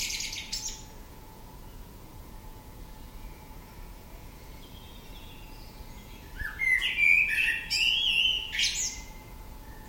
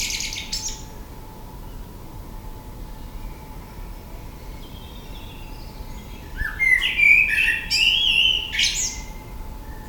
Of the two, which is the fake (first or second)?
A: first